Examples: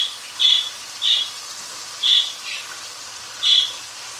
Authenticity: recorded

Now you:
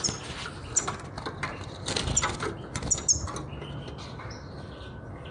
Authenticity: recorded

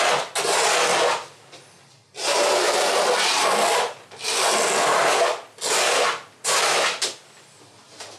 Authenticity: recorded